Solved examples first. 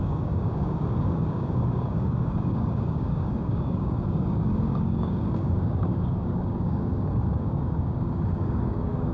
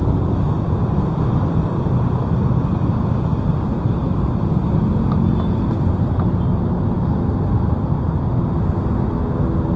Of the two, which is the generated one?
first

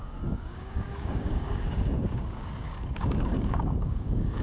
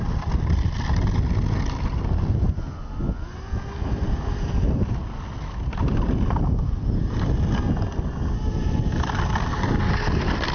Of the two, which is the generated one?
first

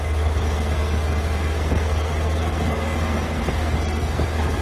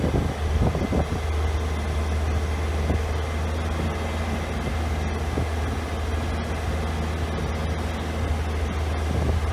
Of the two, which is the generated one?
first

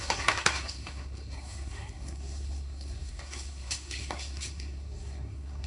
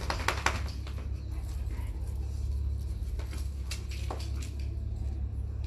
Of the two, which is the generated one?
first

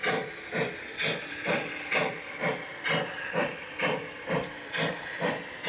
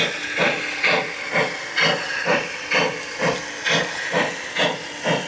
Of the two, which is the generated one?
first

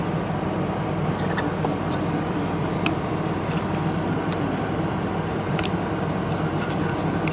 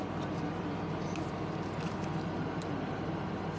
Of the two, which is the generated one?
first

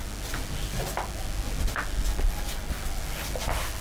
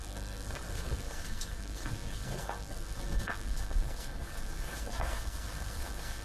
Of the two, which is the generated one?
second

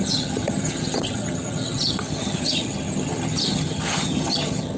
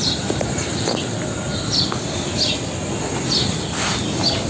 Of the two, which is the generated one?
first